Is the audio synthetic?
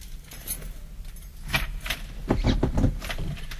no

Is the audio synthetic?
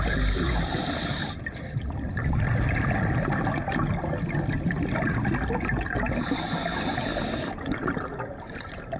no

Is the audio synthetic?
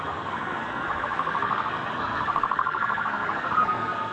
yes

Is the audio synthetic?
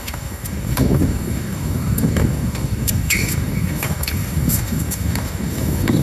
yes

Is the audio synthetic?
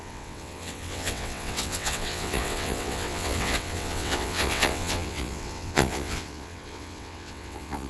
yes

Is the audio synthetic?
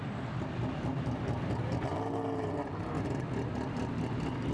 no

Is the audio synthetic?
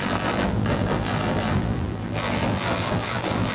yes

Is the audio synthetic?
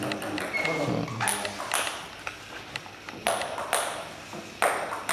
no